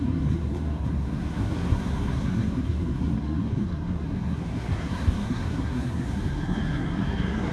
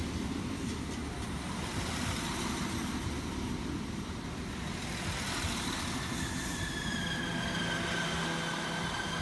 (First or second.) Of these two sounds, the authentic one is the second